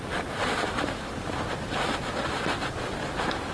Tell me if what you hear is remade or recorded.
recorded